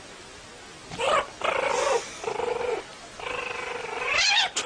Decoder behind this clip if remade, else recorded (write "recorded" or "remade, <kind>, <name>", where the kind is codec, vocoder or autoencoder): recorded